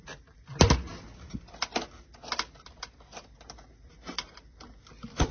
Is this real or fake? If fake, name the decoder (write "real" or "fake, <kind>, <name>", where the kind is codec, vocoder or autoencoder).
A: real